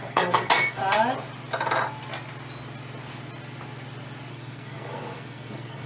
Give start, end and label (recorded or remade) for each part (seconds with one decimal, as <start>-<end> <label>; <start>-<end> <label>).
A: 0.0-0.8 remade; 0.8-4.3 recorded; 4.3-5.9 remade